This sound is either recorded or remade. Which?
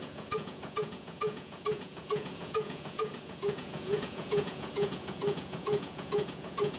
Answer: remade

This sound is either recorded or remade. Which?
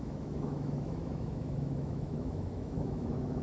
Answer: remade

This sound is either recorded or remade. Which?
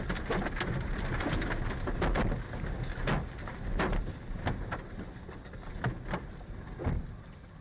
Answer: recorded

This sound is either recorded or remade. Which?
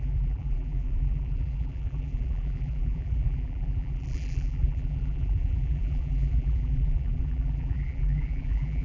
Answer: remade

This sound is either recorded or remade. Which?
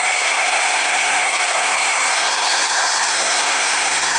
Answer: remade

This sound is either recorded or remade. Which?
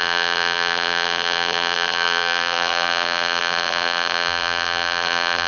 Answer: remade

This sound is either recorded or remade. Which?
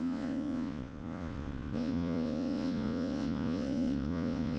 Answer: remade